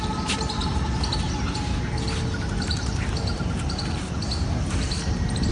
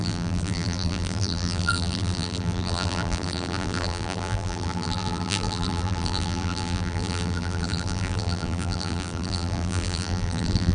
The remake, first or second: second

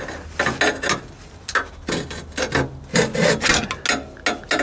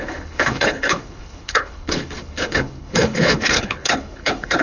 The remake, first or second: second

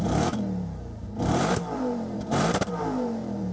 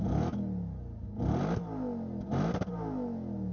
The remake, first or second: first